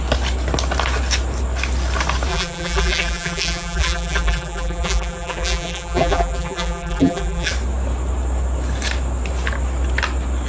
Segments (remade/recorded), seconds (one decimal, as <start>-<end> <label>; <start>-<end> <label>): 0.0-2.3 recorded; 2.3-7.5 remade; 7.5-10.5 recorded